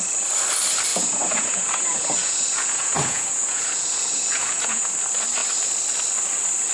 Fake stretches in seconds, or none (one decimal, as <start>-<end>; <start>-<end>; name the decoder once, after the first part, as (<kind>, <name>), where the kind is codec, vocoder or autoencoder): 0.9-4.9 (vocoder, Vocos)